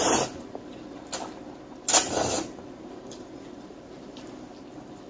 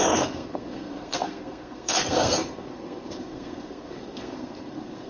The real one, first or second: first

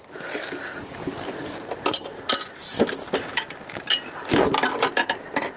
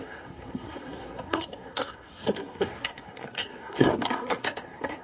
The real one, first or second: first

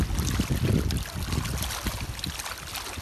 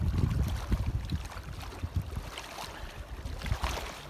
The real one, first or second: first